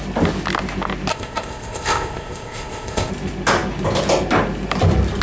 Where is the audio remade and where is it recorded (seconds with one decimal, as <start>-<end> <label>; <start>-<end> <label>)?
0.0-1.1 recorded; 1.1-3.1 remade; 3.1-5.2 recorded

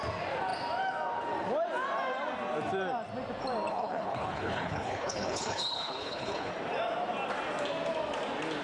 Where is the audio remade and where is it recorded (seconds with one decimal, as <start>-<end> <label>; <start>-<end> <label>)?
0.0-3.7 recorded; 3.7-6.5 remade; 6.5-8.6 recorded